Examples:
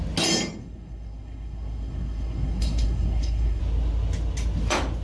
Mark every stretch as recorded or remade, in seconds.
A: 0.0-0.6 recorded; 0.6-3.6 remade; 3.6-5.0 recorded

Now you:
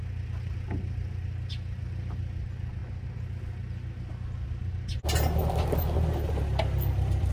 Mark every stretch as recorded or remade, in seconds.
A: 0.0-7.3 recorded

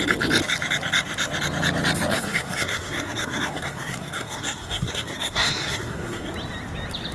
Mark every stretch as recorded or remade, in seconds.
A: 0.0-2.1 recorded; 2.1-6.3 remade; 6.3-7.1 recorded

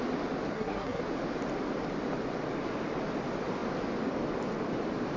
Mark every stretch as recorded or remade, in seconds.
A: 0.0-0.5 recorded; 0.5-1.0 remade; 1.0-5.2 recorded

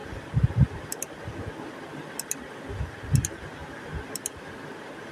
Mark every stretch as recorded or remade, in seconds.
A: 0.0-5.1 recorded

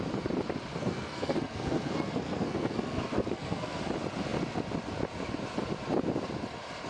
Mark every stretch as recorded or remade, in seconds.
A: 0.0-0.7 recorded; 0.7-3.8 remade; 3.8-6.9 recorded

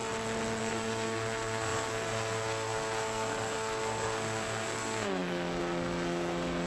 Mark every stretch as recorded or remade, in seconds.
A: 0.0-0.6 recorded; 0.6-6.7 remade